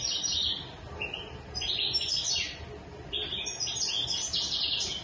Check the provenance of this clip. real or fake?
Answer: real